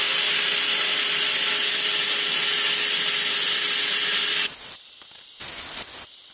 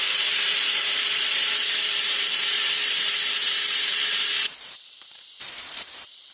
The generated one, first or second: second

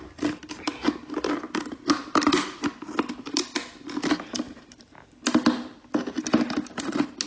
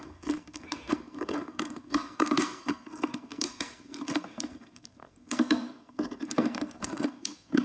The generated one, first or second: second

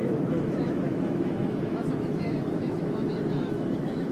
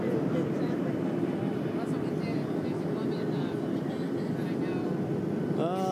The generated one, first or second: first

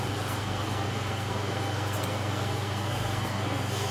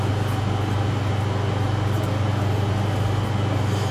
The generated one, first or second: first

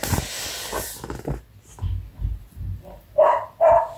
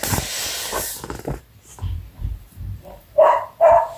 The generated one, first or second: second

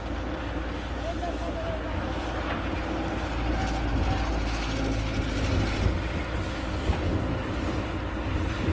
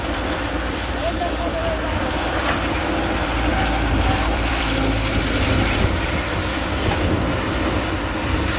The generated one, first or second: second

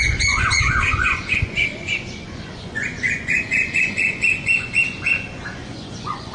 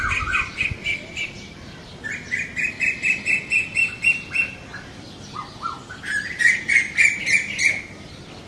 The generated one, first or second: first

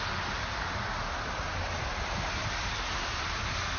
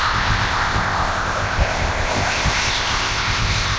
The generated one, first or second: second